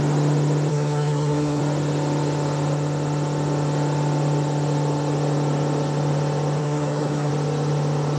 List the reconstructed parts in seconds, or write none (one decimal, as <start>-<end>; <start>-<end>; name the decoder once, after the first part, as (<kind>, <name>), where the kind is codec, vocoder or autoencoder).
0.7-1.6 (codec, SNAC); 6.6-7.3